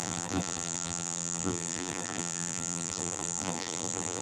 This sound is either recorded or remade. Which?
remade